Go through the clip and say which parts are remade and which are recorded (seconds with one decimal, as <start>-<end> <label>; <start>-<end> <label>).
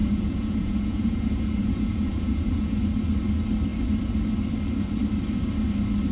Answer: 0.0-2.8 remade; 2.8-6.1 recorded